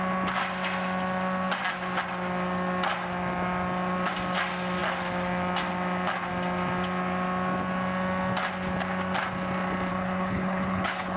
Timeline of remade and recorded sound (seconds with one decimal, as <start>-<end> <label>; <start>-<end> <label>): 0.0-9.9 recorded; 9.9-11.2 remade